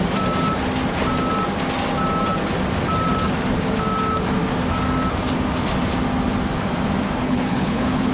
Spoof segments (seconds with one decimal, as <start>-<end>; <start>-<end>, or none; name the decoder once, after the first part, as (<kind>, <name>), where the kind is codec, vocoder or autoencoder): 7.2-8.1 (codec, HILCodec)